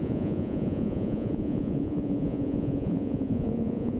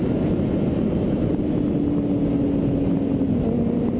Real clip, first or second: second